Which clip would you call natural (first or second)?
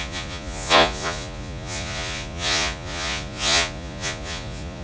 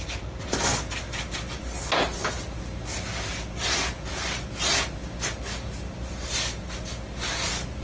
second